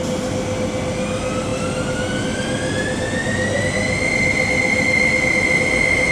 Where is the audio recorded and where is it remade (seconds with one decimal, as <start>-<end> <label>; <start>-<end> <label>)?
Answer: 0.0-6.1 recorded